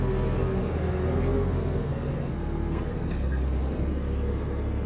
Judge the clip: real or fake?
fake